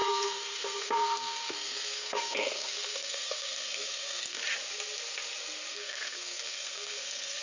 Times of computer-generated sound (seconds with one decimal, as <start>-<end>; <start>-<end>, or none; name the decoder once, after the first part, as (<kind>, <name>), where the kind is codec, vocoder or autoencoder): 0.0-4.4 (codec, SNAC); 5.7-7.4